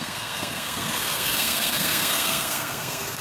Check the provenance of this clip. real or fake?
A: fake